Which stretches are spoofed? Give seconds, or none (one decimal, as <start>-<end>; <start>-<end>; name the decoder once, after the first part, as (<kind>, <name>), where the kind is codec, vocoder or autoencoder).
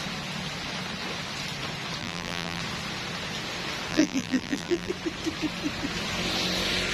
2.0-2.6 (vocoder, BigVGAN v2); 3.9-4.9